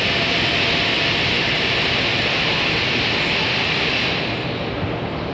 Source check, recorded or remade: recorded